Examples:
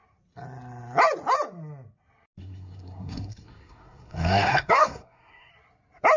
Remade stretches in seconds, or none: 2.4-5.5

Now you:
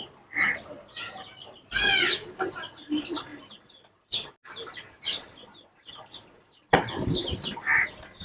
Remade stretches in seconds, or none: none

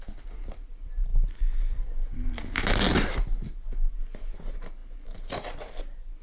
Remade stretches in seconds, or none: none

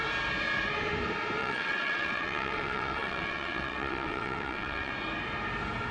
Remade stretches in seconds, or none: 1.4-4.9